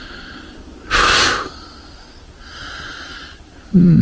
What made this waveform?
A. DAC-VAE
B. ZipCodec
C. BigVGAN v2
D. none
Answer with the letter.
C